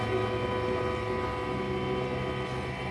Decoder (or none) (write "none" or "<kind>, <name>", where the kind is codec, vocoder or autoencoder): none